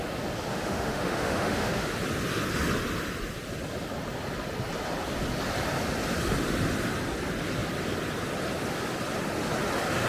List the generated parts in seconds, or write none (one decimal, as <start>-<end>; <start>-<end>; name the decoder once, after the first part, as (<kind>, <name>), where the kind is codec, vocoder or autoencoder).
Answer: 0.5-1.9 (autoencoder, DAC-VAE)